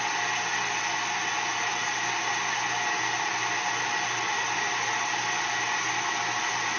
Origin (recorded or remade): recorded